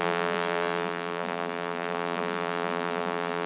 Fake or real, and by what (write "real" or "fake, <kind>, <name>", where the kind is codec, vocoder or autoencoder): fake, vocoder, BigVGAN v2